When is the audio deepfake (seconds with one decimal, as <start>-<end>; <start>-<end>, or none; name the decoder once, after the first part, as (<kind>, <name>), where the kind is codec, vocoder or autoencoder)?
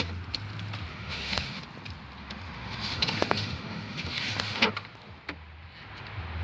0.9-1.6 (autoencoder, DAC-VAE); 2.2-4.7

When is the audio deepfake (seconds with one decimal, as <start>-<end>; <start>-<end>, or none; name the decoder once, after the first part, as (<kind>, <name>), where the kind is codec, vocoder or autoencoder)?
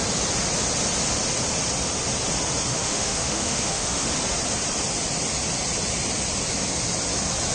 2.7-4.1 (autoencoder, DAC-VAE)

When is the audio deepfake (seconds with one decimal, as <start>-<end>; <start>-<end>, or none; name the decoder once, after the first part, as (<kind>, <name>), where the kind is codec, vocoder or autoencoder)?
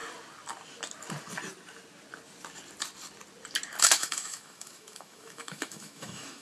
3.8-6.4 (autoencoder, DAC-VAE)